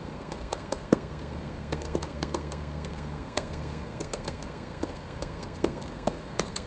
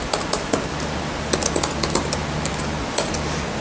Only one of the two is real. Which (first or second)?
second